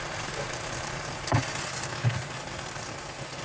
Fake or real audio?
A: real